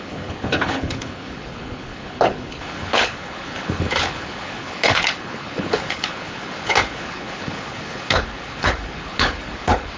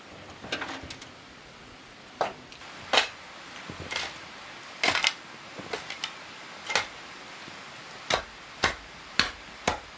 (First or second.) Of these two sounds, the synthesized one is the first